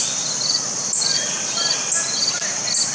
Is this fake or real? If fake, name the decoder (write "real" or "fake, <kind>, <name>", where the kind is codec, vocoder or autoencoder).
real